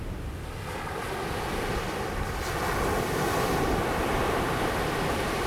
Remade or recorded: recorded